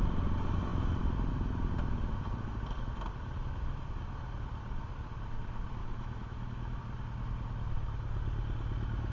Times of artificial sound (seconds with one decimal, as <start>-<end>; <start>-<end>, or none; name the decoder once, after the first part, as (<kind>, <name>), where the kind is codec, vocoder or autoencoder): 5.8-6.8 (autoencoder, DAC-VAE)